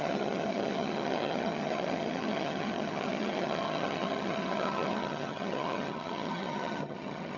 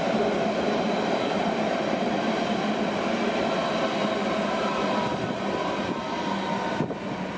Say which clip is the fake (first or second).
first